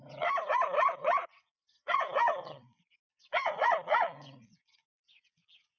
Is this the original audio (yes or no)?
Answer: no